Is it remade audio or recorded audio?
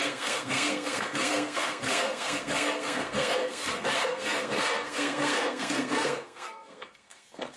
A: remade